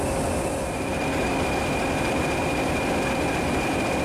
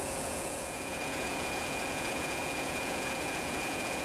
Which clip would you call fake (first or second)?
second